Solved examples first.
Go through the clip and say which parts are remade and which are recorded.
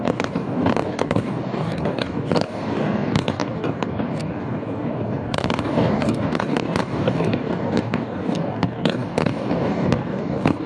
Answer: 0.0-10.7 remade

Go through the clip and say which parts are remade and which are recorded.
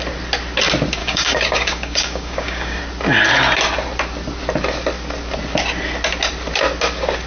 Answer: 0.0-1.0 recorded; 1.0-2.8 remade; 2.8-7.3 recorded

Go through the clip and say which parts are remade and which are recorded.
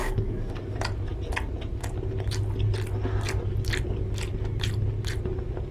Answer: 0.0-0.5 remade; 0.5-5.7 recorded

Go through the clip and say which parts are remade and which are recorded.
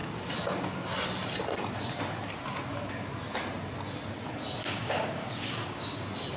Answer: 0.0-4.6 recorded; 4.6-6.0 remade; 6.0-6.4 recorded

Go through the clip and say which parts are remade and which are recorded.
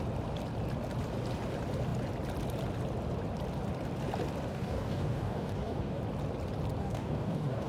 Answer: 0.0-4.5 recorded; 4.5-6.0 remade; 6.0-6.8 recorded; 6.8-7.7 remade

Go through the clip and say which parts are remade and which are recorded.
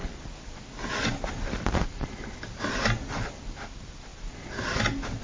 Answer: 0.0-5.2 recorded